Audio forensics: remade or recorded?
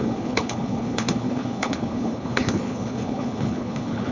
remade